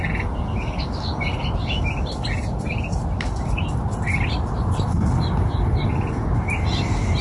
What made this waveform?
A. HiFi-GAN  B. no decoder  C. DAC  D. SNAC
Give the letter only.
B